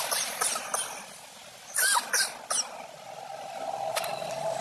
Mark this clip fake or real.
real